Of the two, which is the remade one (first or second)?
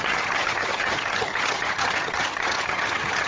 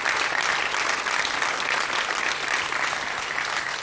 first